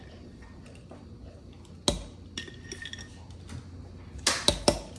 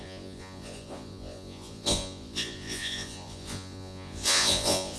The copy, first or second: second